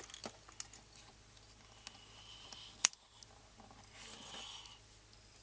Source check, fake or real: real